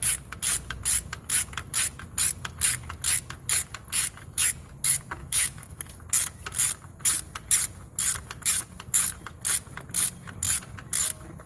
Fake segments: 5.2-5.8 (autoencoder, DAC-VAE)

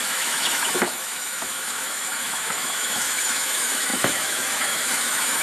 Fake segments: 0.0-5.4 (autoencoder, DAC-VAE)

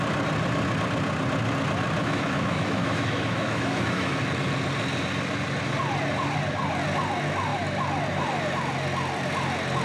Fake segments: 2.0-4.2 (autoencoder, DAC-VAE)

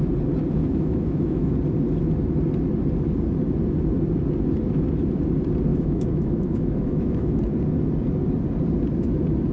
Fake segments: 0.6-1.5 (autoencoder, DAC-VAE); 5.7-7.4

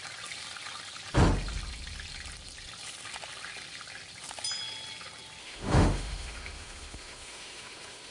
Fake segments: 5.4-8.1 (autoencoder, DAC-VAE)

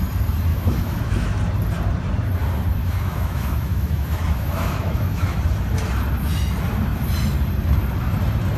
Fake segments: 0.5-1.4 (autoencoder, DAC-VAE); 2.8-5.4

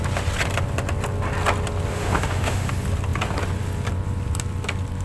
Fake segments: 1.9-2.7 (autoencoder, DAC-VAE)